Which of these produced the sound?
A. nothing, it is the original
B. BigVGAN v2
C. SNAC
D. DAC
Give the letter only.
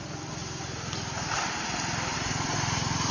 A